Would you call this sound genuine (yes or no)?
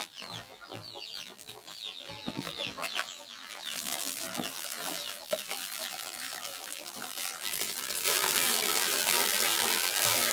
no